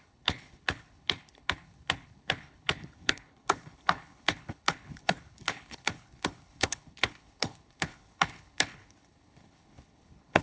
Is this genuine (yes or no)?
no